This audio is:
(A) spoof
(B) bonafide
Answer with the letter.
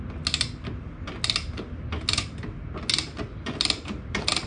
B